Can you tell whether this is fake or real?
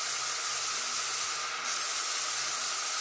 real